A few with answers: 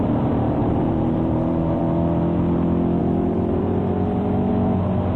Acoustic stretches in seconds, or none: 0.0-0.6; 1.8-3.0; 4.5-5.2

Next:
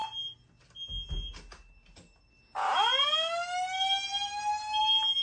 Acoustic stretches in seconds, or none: 0.0-5.2

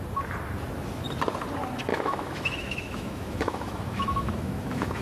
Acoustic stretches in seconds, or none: 0.0-1.9

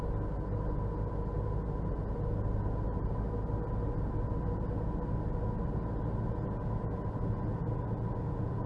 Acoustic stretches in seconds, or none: 0.0-8.7

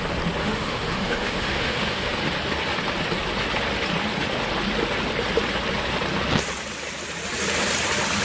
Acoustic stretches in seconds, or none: 0.0-0.4; 2.2-8.2

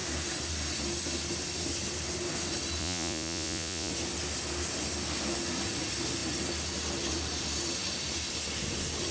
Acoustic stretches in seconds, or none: 0.0-2.8; 3.9-9.1